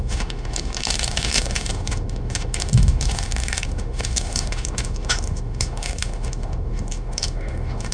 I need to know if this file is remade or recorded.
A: remade